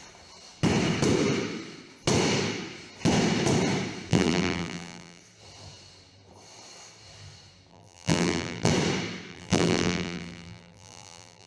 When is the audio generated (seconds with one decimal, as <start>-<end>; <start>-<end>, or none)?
4.1-5.2; 7.7-8.7; 9.3-11.5